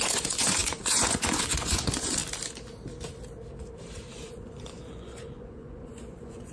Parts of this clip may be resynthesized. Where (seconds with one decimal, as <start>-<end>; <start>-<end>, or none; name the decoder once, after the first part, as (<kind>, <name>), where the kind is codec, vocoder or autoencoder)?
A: 0.0-2.2 (vocoder, Vocos); 4.1-6.5